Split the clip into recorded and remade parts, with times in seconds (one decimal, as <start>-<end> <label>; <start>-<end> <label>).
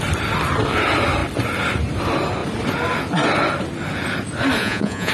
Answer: 0.0-4.6 recorded; 4.6-5.1 remade